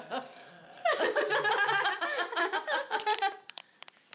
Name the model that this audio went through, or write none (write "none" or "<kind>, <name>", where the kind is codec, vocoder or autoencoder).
vocoder, BigVGAN v2